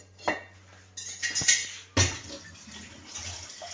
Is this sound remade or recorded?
recorded